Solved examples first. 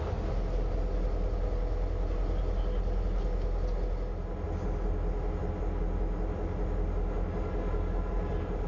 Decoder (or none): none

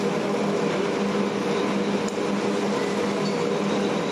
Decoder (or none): none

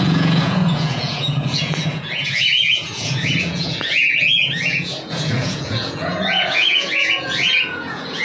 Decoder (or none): vocoder, Vocos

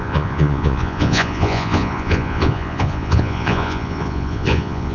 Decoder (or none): vocoder, Vocos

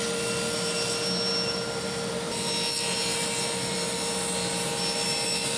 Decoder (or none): none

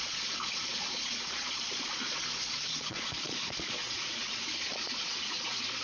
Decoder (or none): vocoder, Vocos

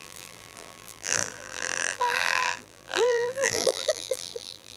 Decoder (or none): vocoder, BigVGAN v2